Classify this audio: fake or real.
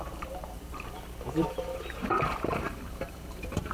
fake